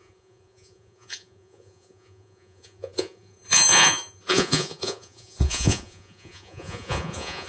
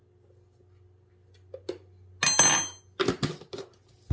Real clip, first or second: second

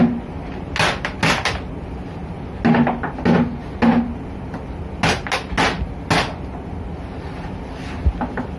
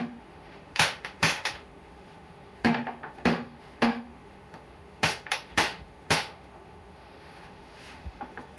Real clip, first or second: first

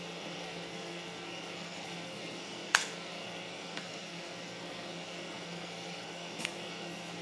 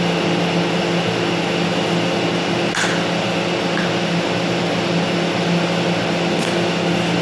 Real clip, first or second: second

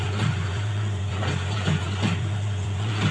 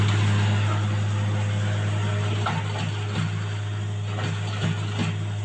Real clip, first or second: second